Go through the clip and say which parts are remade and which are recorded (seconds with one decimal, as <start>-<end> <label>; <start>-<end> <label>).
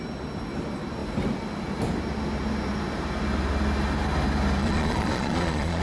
0.0-4.6 recorded; 4.6-5.8 remade